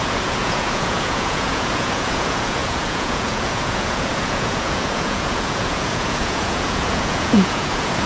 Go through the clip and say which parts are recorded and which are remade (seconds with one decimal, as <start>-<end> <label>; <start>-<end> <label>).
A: 0.0-8.1 remade